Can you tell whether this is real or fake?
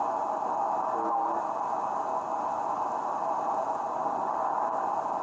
real